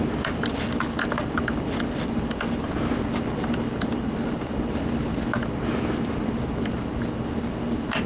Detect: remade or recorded recorded